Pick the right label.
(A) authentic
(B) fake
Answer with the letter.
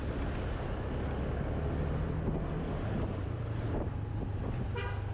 A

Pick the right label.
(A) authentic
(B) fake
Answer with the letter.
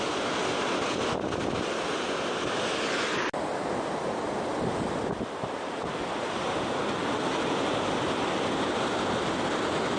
A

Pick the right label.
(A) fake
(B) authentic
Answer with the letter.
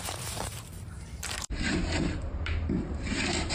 A